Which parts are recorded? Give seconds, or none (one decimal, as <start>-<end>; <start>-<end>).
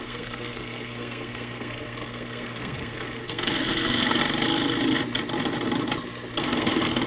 4.2-6.4